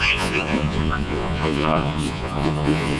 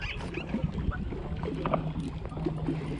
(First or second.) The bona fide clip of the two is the second